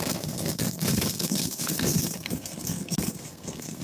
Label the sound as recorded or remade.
remade